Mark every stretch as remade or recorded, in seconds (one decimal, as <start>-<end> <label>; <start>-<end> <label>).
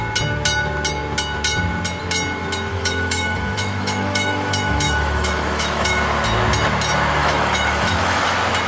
0.0-2.7 recorded; 2.7-6.0 remade; 6.0-7.2 recorded; 7.2-8.2 remade; 8.2-8.7 recorded